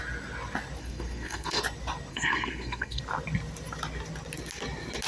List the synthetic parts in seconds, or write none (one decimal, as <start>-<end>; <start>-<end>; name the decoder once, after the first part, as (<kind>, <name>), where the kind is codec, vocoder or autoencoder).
0.8-1.6 (codec, SNAC); 2.1-3.0